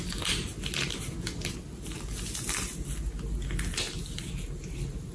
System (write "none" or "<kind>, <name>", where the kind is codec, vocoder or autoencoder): none